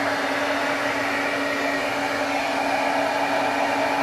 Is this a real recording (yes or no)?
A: yes